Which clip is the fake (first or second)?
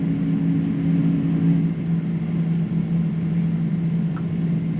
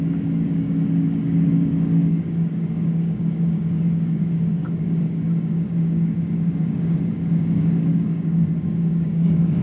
second